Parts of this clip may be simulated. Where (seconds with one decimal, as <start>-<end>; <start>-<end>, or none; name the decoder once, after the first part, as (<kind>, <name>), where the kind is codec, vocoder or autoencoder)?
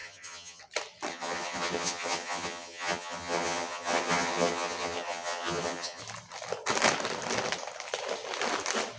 0.0-0.6 (vocoder, HiFi-GAN); 1.1-6.0